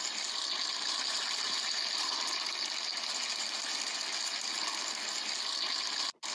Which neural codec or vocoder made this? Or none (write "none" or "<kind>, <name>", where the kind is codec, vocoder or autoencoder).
none